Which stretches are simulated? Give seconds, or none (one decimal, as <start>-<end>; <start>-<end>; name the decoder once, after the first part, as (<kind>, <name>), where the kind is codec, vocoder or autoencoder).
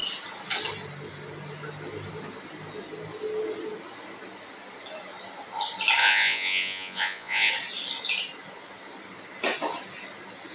6.0-7.5 (vocoder, Vocos)